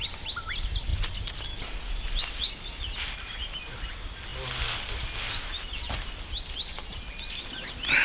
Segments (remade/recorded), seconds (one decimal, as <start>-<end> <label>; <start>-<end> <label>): 0.0-8.0 recorded